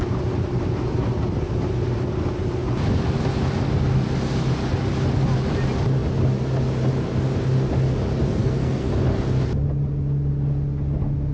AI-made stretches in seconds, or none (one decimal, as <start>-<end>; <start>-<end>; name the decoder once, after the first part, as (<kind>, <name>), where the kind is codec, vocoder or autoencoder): 8.4-8.9 (codec, SNAC)